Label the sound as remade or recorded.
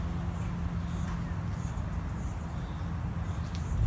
recorded